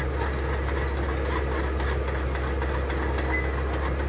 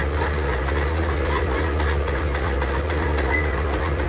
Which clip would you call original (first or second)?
first